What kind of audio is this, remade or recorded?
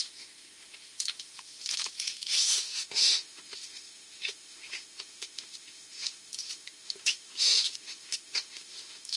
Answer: remade